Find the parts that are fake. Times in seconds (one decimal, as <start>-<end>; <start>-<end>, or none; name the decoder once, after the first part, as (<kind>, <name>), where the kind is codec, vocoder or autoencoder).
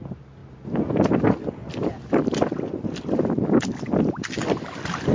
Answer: none